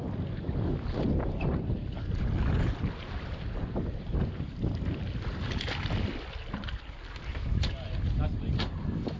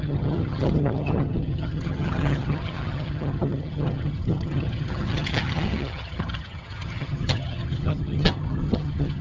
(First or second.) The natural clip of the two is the first